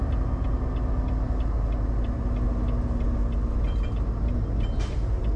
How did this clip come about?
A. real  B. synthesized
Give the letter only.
A